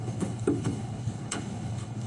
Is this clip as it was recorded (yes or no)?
no